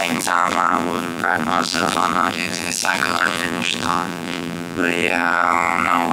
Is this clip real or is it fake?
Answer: fake